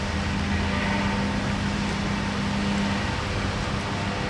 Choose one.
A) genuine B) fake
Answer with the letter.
A